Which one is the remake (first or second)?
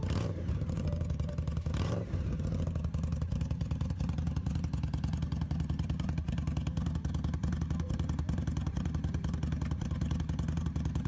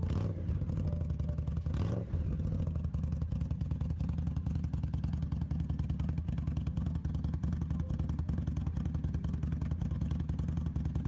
first